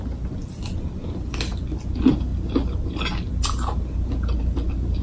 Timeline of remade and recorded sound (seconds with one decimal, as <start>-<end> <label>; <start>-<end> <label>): 0.0-5.0 recorded